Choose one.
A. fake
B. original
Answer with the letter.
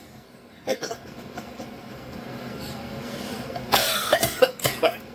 A